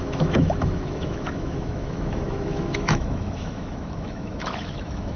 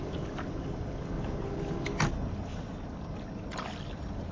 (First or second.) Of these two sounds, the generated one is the first